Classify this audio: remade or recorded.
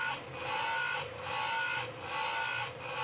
recorded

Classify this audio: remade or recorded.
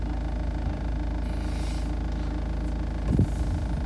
recorded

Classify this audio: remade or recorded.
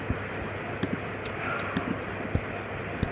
recorded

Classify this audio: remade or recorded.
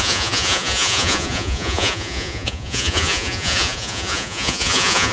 remade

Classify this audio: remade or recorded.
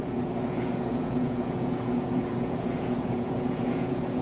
remade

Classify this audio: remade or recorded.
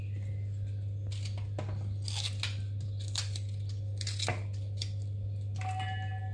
recorded